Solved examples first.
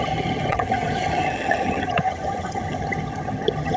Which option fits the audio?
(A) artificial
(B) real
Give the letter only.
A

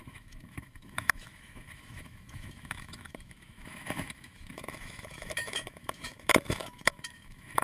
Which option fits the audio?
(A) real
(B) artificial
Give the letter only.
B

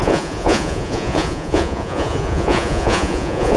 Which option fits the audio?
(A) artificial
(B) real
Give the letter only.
A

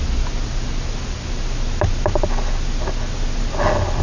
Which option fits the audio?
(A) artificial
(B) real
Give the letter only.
B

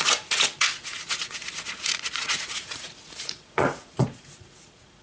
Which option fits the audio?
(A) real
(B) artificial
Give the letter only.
B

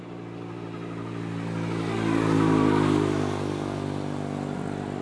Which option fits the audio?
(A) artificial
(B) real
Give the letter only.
B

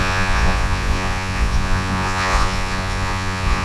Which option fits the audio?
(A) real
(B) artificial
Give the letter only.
B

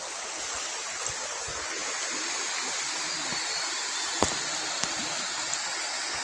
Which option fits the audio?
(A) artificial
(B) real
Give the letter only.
B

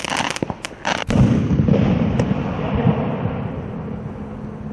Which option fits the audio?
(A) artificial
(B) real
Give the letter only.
B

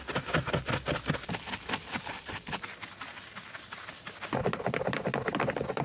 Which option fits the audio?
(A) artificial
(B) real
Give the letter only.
A